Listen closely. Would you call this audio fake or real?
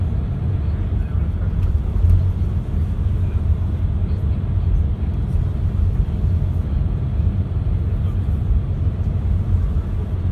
real